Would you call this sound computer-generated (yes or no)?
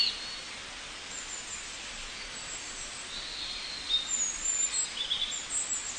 no